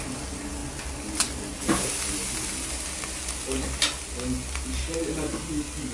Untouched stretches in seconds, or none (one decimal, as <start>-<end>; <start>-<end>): 0.0-5.9